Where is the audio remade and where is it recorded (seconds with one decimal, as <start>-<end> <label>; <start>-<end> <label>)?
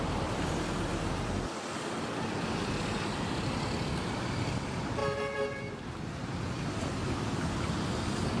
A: 0.0-8.4 recorded